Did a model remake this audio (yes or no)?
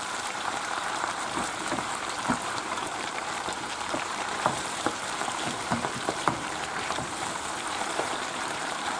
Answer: yes